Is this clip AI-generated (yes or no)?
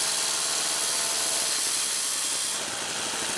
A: no